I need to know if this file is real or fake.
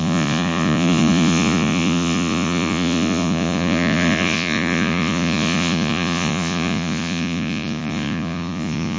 fake